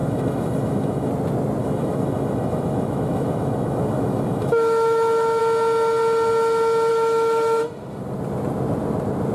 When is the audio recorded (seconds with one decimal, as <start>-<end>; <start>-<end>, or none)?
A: 1.1-1.6; 5.4-6.9; 7.6-9.3